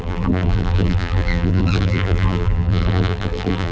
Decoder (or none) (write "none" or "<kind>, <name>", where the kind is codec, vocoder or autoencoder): vocoder, BigVGAN v2